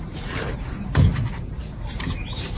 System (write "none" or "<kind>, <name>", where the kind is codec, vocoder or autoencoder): vocoder, BigVGAN v2